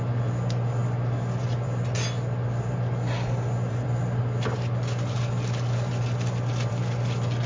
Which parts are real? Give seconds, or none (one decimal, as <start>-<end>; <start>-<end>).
0.0-7.5